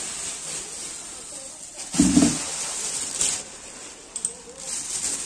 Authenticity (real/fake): real